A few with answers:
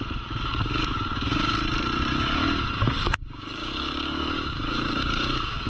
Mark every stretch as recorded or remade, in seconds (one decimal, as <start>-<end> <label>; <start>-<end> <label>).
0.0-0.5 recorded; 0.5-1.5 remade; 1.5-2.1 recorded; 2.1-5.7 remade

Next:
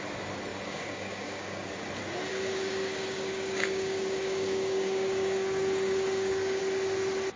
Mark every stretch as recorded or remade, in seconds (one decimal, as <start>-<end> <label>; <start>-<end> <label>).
0.0-0.5 recorded; 0.5-1.9 remade; 1.9-2.3 recorded; 2.3-6.6 remade; 6.6-7.4 recorded

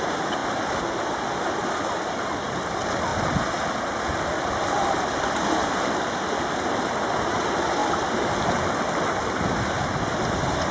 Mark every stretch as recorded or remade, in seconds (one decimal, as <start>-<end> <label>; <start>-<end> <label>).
0.0-10.7 recorded

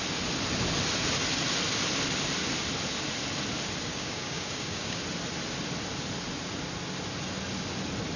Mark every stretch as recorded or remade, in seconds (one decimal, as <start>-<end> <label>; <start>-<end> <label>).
0.0-3.9 recorded; 3.9-5.0 remade; 5.0-8.2 recorded

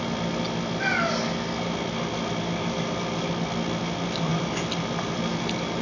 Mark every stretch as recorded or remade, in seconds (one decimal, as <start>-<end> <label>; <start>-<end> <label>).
0.0-5.8 recorded

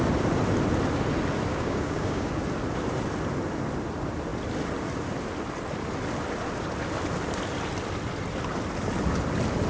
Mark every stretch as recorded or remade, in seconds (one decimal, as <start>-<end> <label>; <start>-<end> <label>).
0.0-1.5 recorded; 1.5-2.3 remade; 2.3-9.7 recorded

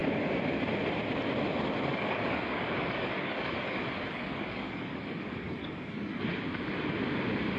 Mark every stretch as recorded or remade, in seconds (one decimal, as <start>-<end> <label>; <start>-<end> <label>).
0.0-1.9 recorded; 1.9-6.3 remade; 6.3-7.6 recorded